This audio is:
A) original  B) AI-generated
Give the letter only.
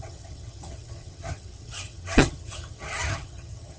B